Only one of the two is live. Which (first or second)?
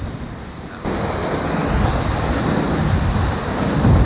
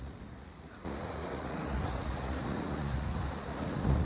first